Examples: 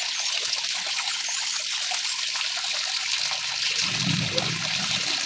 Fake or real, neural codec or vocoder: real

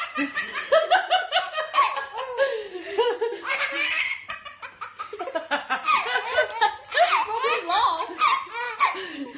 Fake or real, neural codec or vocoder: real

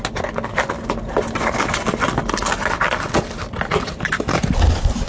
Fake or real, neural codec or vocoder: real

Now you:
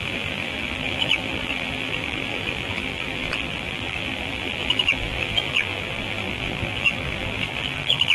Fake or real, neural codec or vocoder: fake, vocoder, BigVGAN v2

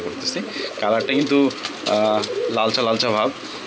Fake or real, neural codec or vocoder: real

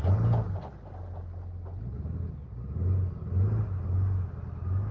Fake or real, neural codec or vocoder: real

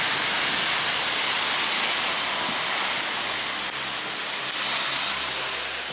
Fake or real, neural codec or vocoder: real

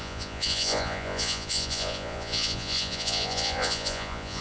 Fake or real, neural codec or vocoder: fake, vocoder, Vocos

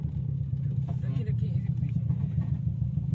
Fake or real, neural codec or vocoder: fake, vocoder, BigVGAN v2